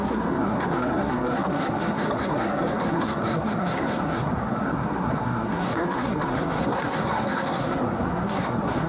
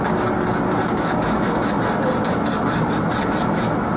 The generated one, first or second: first